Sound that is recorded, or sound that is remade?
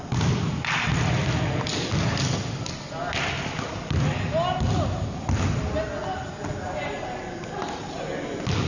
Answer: recorded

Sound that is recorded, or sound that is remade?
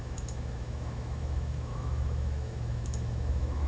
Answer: remade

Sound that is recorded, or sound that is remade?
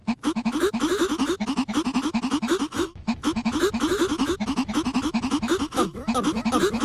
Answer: remade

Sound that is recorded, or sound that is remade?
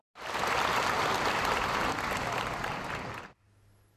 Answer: recorded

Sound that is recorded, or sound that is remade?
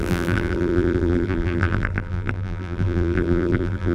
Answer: remade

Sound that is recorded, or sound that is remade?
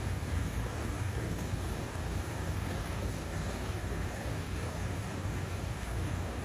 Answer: remade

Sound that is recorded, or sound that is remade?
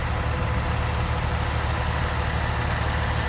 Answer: recorded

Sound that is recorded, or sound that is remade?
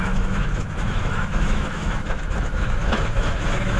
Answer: remade